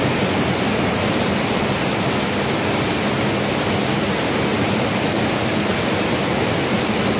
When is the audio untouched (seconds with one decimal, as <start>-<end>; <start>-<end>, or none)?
0.0-7.2

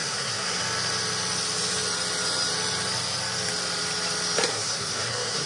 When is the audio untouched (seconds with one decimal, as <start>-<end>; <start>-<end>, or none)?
0.6-4.5

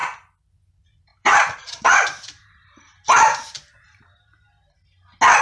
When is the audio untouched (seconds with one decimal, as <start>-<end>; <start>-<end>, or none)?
0.0-1.1; 4.2-5.4

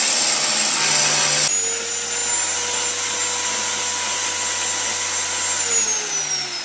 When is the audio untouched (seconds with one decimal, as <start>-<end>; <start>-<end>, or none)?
0.0-6.6

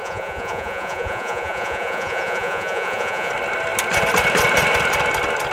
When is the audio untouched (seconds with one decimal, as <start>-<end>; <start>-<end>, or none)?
3.3-5.5

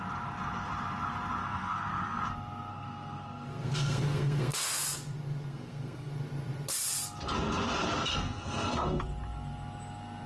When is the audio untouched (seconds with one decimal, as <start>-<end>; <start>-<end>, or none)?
0.0-1.4; 2.2-2.7; 4.6-5.5; 6.1-8.1; 9.0-10.3